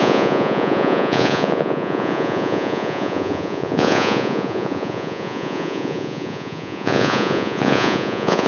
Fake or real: fake